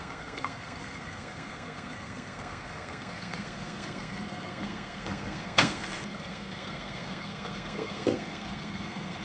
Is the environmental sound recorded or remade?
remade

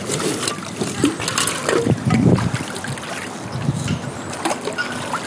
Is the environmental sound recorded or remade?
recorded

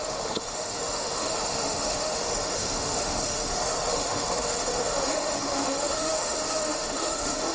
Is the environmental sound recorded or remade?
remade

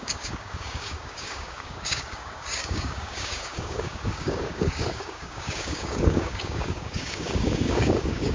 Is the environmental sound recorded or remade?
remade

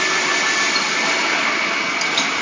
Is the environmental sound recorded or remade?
recorded